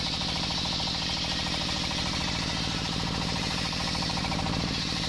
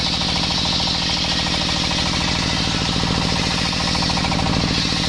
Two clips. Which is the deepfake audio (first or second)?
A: first